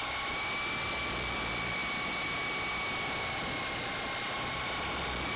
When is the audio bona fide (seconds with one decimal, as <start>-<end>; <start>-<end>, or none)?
0.0-5.4